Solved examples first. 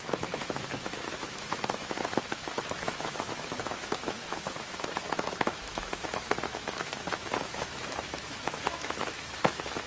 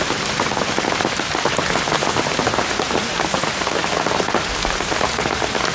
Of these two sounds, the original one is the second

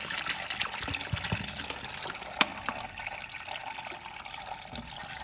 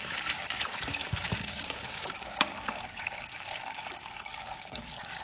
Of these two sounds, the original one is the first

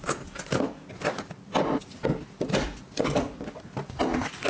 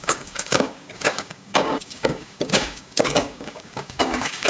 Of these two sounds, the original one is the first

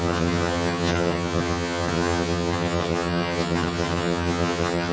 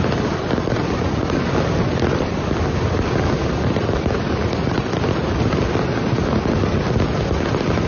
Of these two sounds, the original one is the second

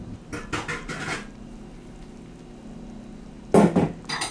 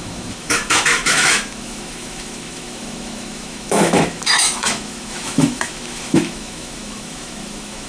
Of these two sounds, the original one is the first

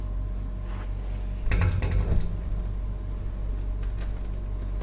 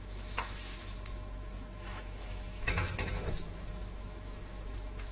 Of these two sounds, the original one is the first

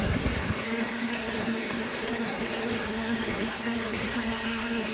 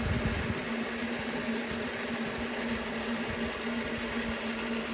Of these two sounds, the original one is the second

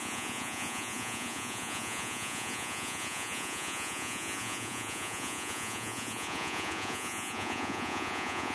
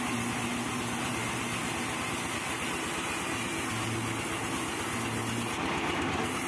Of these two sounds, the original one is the second